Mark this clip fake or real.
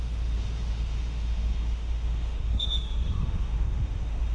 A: fake